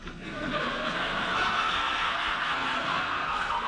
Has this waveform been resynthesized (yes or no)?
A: yes